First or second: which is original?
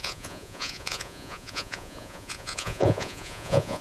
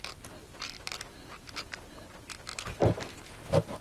second